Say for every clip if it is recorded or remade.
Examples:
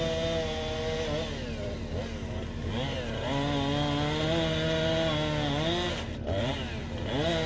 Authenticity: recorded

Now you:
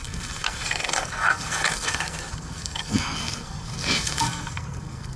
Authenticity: remade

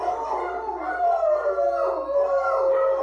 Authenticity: recorded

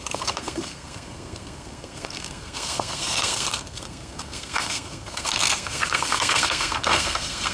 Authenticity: remade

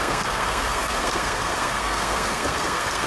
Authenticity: remade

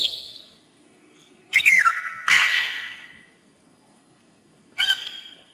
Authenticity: remade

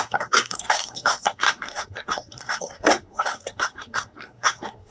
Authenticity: remade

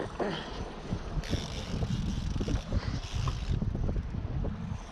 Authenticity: recorded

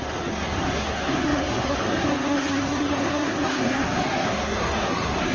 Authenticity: remade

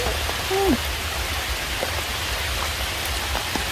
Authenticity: recorded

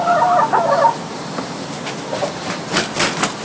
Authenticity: recorded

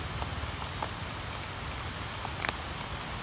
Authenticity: recorded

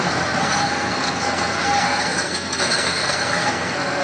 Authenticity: remade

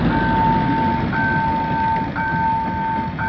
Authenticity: recorded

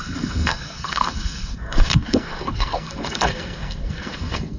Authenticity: remade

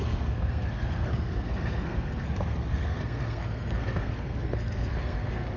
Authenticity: remade